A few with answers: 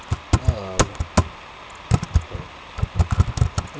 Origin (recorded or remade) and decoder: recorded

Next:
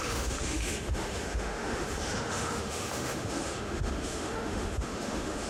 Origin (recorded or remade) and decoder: remade, autoencoder, DAC-VAE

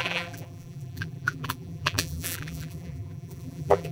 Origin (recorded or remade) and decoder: remade, vocoder, BigVGAN v2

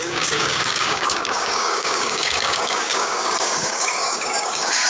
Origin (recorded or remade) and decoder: remade, codec, DAC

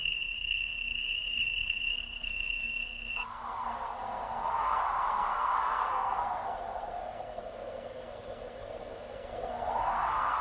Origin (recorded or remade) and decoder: remade, codec, SNAC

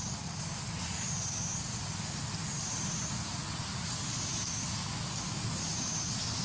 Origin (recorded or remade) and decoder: recorded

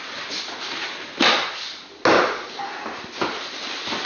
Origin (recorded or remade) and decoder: recorded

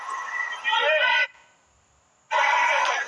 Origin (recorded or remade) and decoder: remade, vocoder, BigVGAN v2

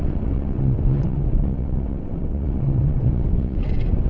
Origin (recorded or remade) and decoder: remade, vocoder, WaveNeXt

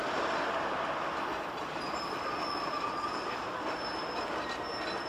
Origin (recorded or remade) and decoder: recorded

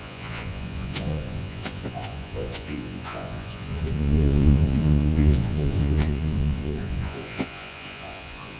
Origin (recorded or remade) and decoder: remade, vocoder, Vocos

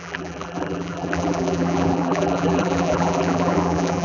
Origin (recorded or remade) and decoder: remade, vocoder, BigVGAN v2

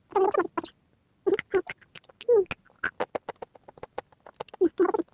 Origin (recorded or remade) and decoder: recorded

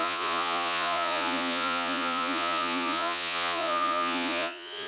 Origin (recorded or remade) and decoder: remade, vocoder, Vocos